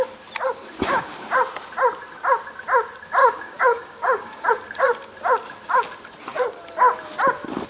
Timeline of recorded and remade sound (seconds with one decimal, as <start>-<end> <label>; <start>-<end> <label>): 0.0-0.6 recorded; 0.6-1.3 remade; 1.3-3.2 recorded; 3.2-4.5 remade; 4.5-7.7 recorded